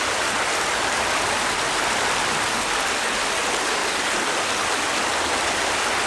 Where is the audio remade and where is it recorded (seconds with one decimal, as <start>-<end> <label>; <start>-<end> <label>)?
0.0-6.1 recorded